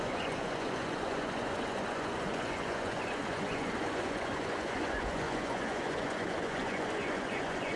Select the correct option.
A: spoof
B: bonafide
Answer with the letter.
A